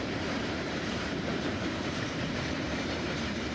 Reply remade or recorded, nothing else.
remade